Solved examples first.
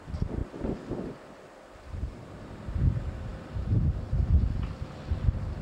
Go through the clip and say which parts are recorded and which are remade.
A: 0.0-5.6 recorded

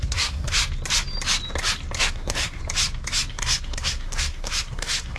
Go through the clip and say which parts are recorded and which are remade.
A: 0.0-0.6 remade; 0.6-2.0 recorded; 2.0-2.6 remade; 2.6-3.3 recorded; 3.3-5.2 remade

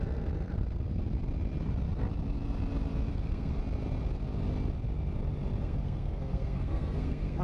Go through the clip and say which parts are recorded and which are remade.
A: 0.0-1.0 remade; 1.0-3.1 recorded; 3.1-3.6 remade; 3.6-5.6 recorded; 5.6-7.4 remade

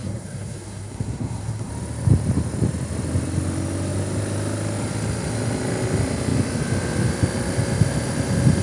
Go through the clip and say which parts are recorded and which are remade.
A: 0.0-1.7 remade; 1.7-8.6 recorded

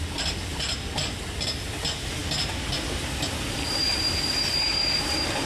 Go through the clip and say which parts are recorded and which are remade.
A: 0.0-5.5 recorded

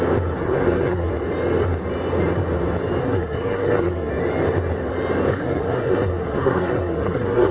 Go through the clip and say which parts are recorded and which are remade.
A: 0.0-0.4 recorded; 0.4-1.1 remade; 1.1-3.0 recorded; 3.0-4.1 remade; 4.1-5.3 recorded; 5.3-7.5 remade